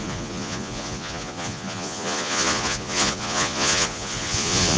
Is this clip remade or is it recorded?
remade